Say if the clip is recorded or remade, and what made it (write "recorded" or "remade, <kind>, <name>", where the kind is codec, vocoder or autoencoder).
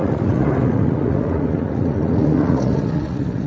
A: remade, vocoder, Vocos